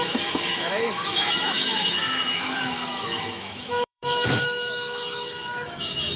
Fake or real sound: fake